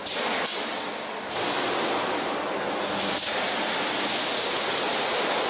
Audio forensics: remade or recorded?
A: recorded